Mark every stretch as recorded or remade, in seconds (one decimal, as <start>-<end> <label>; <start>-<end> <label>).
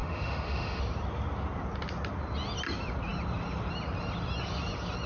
0.0-0.8 remade; 0.8-5.1 recorded